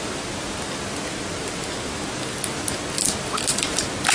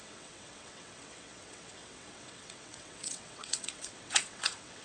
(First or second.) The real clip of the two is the first